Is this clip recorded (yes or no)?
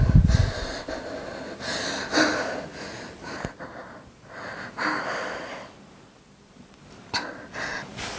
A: yes